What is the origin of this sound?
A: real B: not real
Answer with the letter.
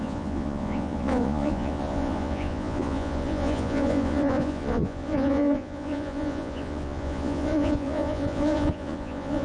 B